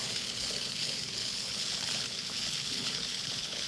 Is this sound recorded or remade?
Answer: remade